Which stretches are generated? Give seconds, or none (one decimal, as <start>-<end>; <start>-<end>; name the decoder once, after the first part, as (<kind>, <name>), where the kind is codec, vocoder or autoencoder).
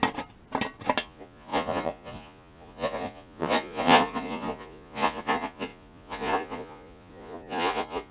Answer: 1.0-8.1 (vocoder, Vocos)